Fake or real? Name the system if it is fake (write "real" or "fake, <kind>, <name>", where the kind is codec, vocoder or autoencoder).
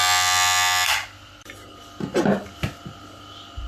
real